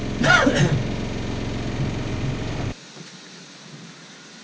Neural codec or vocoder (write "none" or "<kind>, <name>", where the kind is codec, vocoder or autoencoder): none